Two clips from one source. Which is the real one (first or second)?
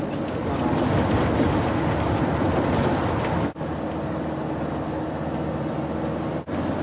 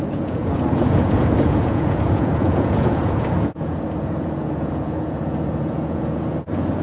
first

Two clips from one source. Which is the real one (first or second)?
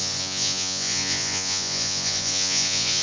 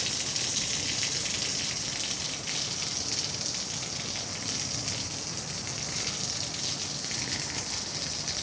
second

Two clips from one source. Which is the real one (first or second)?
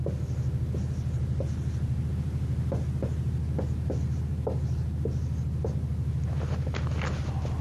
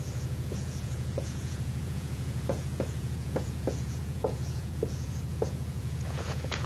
first